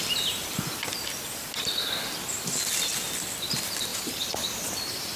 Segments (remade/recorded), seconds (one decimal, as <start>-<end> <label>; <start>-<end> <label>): 0.0-3.9 recorded; 3.9-4.7 remade; 4.7-5.2 recorded